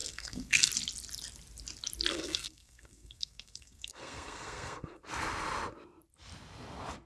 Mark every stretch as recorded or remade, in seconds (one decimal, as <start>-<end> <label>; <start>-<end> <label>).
0.0-0.7 remade; 0.7-2.1 recorded; 2.1-5.0 remade; 5.0-7.1 recorded